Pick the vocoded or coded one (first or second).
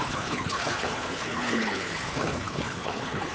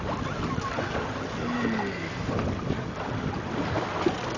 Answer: first